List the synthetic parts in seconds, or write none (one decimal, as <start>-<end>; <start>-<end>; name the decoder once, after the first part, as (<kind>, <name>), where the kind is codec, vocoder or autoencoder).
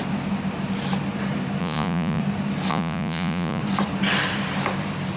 1.6-2.2 (vocoder, Vocos); 2.7-3.6